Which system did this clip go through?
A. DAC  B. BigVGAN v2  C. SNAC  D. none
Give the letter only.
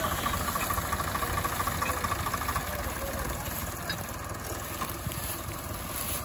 D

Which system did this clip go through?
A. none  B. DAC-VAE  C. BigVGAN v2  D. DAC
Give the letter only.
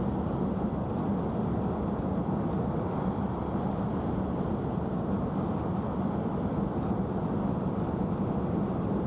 A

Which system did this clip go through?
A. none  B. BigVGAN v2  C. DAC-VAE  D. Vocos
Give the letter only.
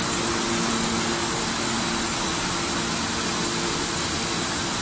A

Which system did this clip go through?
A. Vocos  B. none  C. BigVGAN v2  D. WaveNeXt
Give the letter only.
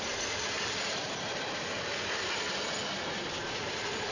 B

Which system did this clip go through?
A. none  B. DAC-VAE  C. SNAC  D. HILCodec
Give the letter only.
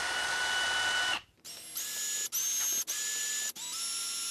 A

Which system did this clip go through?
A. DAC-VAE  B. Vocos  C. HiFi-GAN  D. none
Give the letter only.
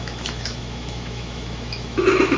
A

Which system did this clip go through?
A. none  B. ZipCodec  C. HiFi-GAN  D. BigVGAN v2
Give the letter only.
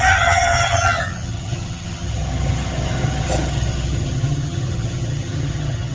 C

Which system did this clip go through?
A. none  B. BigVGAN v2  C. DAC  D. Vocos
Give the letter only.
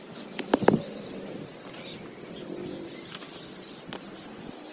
A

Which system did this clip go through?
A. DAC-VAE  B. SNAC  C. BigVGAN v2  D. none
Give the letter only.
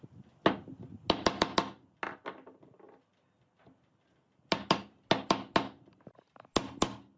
D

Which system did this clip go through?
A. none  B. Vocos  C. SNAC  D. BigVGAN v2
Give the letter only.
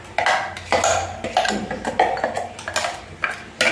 A